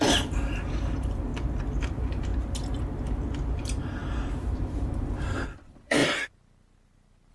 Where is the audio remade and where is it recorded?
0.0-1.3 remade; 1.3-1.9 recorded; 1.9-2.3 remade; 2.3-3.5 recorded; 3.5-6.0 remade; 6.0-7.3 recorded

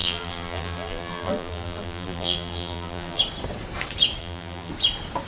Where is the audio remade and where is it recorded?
0.0-3.2 remade; 3.2-4.2 recorded; 4.2-4.7 remade; 4.7-5.3 recorded

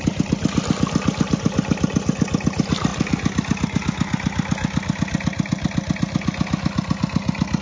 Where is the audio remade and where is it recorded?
0.0-7.6 recorded

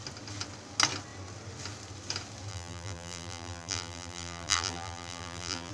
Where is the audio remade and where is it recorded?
0.0-2.5 recorded; 2.5-5.7 remade

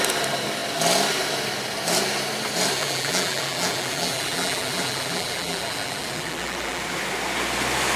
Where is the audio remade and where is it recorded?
0.0-2.8 recorded; 2.8-6.8 remade; 6.8-8.0 recorded

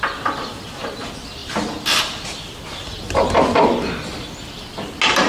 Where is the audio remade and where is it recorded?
0.0-5.3 recorded